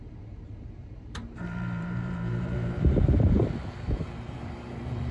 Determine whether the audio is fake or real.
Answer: fake